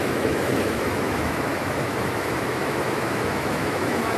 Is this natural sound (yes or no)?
no